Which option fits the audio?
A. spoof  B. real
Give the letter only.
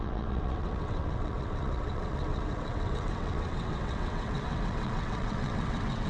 A